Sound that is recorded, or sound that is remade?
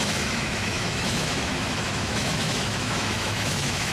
remade